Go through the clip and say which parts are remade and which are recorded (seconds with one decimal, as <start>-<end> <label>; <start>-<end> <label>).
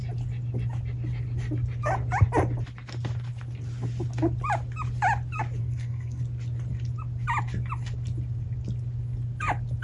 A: 0.0-5.6 recorded; 5.6-6.2 remade; 6.2-9.8 recorded